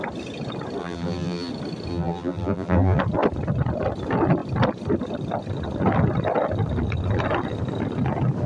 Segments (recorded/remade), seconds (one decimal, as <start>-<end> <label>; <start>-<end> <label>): 0.0-0.8 recorded; 0.8-1.5 remade; 1.5-1.9 recorded; 1.9-3.0 remade; 3.0-8.5 recorded

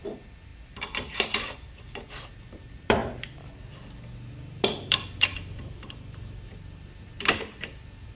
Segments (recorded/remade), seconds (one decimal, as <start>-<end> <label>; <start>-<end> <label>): 0.0-8.2 remade

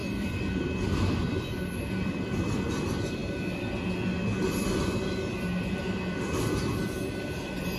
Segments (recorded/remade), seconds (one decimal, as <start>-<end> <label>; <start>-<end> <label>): 0.0-3.2 remade; 3.2-5.8 recorded; 5.8-7.8 remade

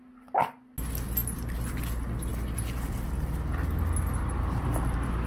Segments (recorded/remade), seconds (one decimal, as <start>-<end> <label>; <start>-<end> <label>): 0.0-5.3 recorded

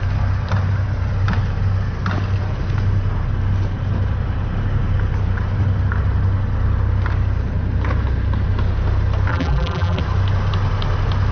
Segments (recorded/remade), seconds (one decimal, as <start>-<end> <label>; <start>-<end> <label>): 0.0-9.3 recorded; 9.3-10.0 remade; 10.0-11.3 recorded

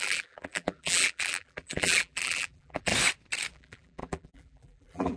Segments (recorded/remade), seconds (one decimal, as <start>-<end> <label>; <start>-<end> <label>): 0.0-2.9 remade; 2.9-3.5 recorded; 3.5-5.2 remade

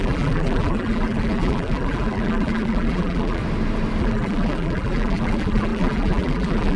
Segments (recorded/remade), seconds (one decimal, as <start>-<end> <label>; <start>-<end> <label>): 0.0-3.4 remade; 3.4-4.0 recorded; 4.0-6.8 remade